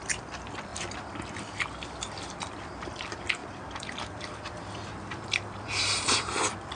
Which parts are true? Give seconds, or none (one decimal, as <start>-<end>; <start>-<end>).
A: none